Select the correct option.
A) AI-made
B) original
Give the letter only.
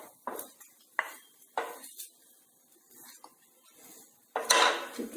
B